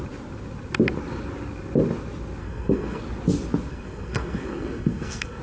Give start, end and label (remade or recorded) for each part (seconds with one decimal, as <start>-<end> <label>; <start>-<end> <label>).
0.0-2.4 recorded; 2.4-3.0 remade; 3.0-3.7 recorded; 3.7-5.4 remade